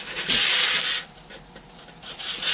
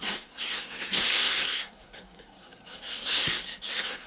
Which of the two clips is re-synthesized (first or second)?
second